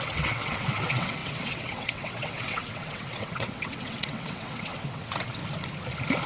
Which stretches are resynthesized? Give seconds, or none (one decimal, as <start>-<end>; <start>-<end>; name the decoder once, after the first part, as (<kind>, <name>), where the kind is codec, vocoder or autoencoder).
0.0-5.4 (vocoder, WaveNeXt)

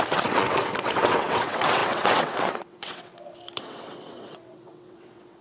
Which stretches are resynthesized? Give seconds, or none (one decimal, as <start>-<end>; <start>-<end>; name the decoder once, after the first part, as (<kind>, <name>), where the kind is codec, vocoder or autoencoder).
0.0-3.1 (vocoder, WaveNeXt); 3.6-5.4

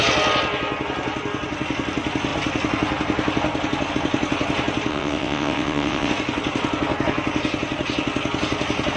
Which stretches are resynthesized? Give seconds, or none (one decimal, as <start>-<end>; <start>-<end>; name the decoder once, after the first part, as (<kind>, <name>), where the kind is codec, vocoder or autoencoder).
4.9-6.1 (vocoder, WaveNeXt)

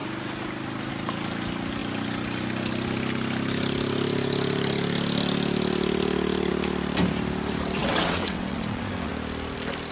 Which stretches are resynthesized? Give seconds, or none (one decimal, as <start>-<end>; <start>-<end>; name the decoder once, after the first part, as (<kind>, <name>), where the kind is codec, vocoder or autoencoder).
7.8-9.1 (vocoder, WaveNeXt)